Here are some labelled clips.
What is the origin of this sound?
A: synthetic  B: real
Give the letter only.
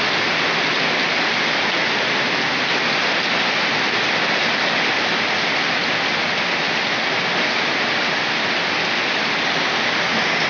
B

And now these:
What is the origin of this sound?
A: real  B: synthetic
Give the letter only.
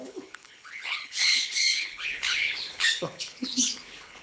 B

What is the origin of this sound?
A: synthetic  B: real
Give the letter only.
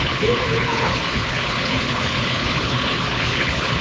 A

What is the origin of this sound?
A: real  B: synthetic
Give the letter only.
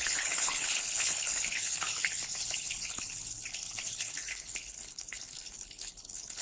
B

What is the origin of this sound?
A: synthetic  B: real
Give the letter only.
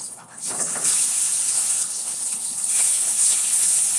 A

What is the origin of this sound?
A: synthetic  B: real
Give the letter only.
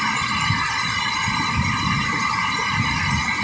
B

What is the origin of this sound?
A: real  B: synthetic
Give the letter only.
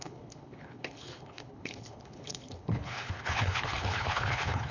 B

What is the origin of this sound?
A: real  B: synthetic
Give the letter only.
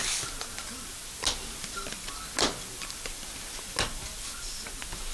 A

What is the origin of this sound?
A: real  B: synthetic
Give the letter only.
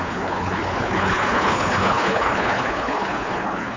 B